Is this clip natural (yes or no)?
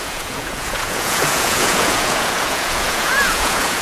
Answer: no